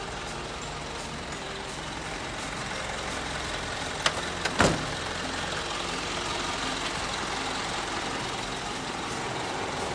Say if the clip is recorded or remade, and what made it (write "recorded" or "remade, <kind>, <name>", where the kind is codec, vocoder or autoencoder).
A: remade, vocoder, BigVGAN v2